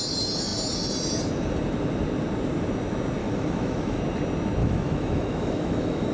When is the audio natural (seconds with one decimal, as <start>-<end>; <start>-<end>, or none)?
0.0-3.2; 4.0-4.6

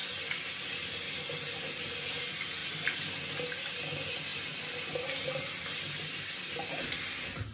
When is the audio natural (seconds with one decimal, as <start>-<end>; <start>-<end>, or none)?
0.0-7.5

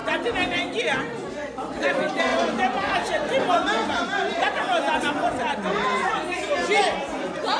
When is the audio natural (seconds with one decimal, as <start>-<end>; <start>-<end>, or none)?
0.0-7.6

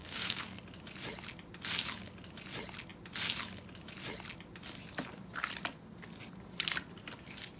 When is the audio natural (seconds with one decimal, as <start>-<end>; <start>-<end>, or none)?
0.6-7.6

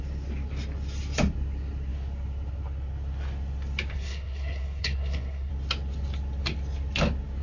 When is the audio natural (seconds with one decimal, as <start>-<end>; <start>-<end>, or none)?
0.0-3.9; 5.5-7.4

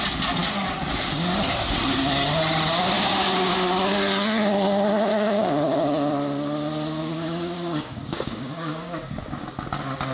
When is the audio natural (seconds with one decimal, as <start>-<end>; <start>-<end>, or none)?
0.0-5.1; 6.1-7.0; 9.5-10.1

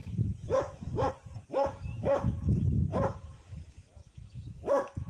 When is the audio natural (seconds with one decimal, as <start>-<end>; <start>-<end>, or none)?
1.1-2.0

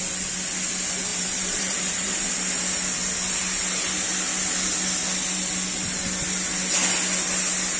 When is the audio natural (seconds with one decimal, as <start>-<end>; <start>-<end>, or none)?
0.0-1.1; 2.3-7.8